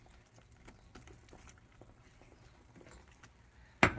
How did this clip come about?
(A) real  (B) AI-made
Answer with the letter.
A